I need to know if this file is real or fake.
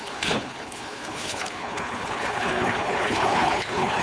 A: fake